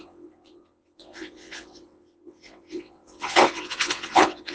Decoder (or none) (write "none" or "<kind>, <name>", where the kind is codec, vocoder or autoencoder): vocoder, WaveNeXt